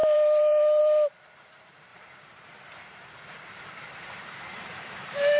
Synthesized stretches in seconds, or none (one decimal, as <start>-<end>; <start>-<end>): 0.0-0.8; 1.9-5.4